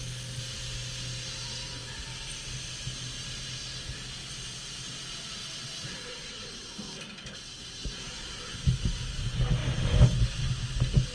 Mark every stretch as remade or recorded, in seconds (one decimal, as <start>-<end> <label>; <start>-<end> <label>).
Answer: 0.0-5.4 recorded; 5.4-6.7 remade; 6.7-11.1 recorded